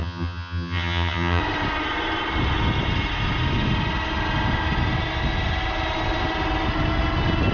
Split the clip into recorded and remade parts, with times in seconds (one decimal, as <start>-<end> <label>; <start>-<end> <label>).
0.0-1.4 remade; 1.4-7.5 recorded